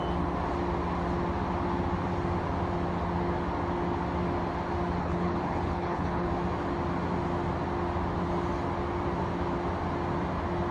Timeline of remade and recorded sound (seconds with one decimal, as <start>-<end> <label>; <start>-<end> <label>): 0.0-5.0 recorded; 5.0-6.3 remade; 6.3-10.7 recorded